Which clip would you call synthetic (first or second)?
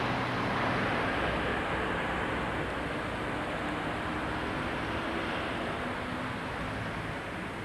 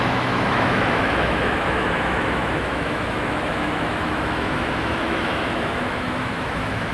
second